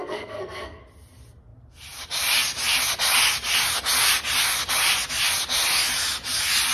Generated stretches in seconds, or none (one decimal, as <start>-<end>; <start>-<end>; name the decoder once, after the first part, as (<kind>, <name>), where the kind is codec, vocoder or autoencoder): 0.0-0.8 (codec, SNAC)